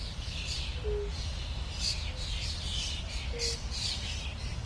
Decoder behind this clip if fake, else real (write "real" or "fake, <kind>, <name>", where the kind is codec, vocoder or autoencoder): real